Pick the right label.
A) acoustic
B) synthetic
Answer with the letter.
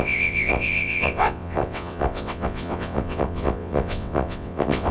B